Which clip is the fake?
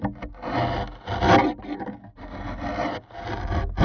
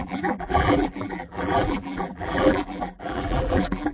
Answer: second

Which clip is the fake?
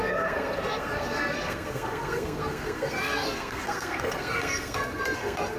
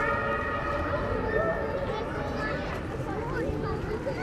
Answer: first